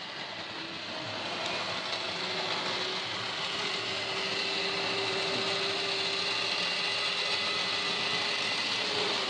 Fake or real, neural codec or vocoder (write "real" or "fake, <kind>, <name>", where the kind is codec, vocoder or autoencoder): real